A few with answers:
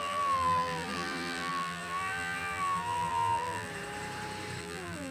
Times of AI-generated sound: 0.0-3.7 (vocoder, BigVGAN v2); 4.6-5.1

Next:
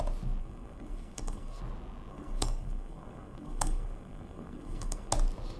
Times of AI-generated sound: 0.4-1.6 (codec, SNAC); 2.1-5.1

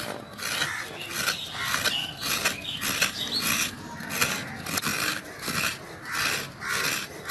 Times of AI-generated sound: none